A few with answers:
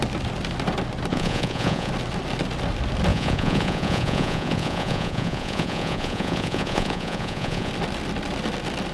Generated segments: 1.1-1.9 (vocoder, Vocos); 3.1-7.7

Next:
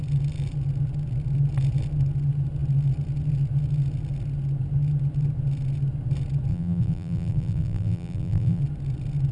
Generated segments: 6.5-8.6 (vocoder, BigVGAN v2)

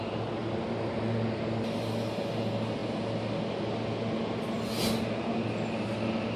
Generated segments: 0.4-0.9 (vocoder, BigVGAN v2)

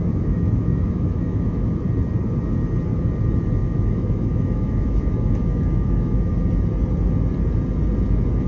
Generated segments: 0.0-1.7 (autoencoder, DAC-VAE); 3.6-6.3